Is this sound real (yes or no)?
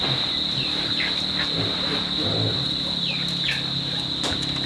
yes